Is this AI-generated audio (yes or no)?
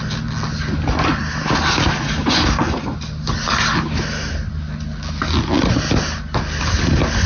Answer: no